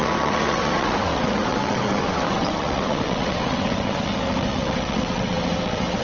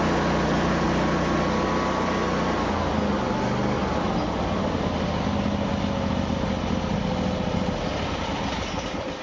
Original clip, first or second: second